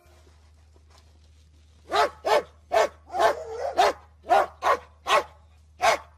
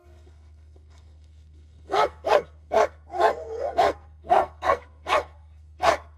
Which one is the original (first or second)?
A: first